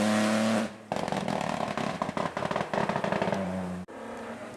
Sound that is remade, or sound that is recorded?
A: recorded